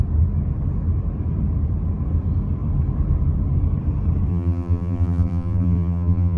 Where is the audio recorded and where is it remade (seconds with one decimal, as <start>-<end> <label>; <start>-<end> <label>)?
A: 0.0-4.3 recorded; 4.3-6.4 remade